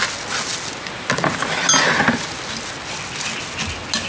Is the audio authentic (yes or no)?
yes